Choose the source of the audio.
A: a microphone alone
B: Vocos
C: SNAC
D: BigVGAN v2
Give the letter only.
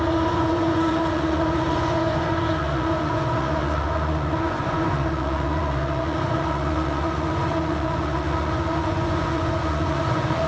B